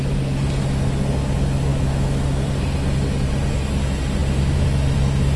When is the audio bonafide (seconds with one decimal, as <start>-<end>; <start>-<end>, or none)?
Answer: 0.0-1.7; 2.3-5.4